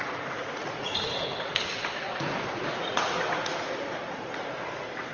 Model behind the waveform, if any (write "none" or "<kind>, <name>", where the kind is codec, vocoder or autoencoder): vocoder, Vocos